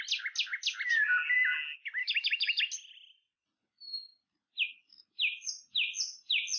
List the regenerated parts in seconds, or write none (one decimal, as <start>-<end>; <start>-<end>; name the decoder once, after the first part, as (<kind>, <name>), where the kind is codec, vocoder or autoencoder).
2.0-2.6 (autoencoder, DAC-VAE)